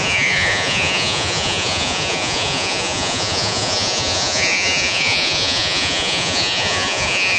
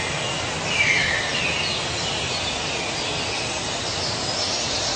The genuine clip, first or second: second